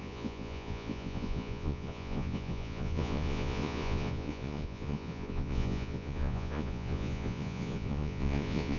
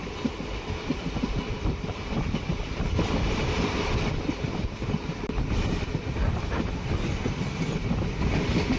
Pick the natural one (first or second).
second